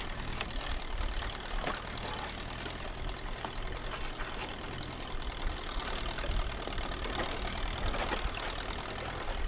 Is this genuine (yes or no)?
yes